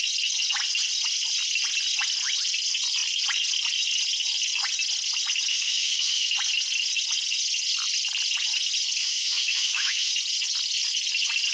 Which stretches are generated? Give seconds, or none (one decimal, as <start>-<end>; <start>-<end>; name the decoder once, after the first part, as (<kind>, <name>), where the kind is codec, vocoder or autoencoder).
5.5-6.3 (autoencoder, DAC-VAE); 9.0-10.1